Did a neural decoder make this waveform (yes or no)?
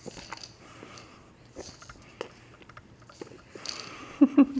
no